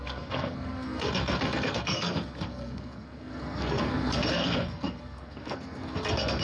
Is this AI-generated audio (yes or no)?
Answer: yes